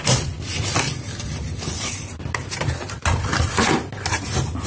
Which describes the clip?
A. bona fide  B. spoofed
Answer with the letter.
A